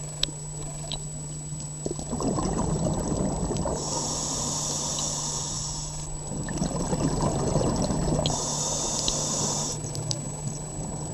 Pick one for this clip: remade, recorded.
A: recorded